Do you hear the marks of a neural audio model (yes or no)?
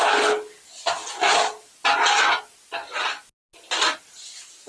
no